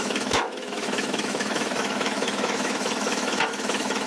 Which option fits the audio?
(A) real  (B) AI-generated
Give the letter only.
B